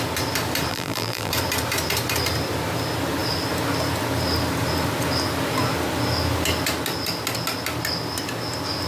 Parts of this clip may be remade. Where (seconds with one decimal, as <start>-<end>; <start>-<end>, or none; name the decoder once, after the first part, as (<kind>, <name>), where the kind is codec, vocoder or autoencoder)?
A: 0.7-1.3 (vocoder, BigVGAN v2)